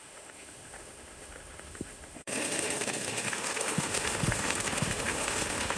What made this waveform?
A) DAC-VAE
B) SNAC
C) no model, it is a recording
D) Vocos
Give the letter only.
A